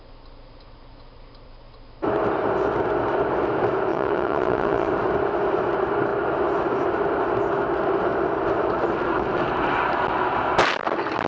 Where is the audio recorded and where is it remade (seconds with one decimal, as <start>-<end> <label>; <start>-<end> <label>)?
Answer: 0.0-3.9 recorded; 3.9-4.9 remade; 4.9-11.3 recorded